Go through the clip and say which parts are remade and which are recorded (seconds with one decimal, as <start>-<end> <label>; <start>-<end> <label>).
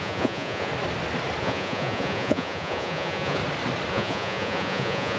0.0-0.7 remade; 0.7-1.4 recorded; 1.4-3.4 remade; 3.4-3.9 recorded; 3.9-5.2 remade